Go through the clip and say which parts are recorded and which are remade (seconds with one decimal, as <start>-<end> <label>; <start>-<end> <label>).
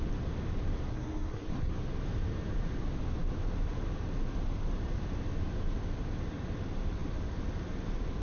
0.0-0.9 recorded; 0.9-1.7 remade; 1.7-8.2 recorded